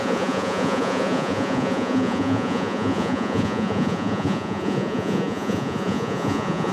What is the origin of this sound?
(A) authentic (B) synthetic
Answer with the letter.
B